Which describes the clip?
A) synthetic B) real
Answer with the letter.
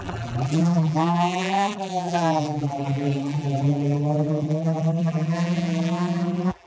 A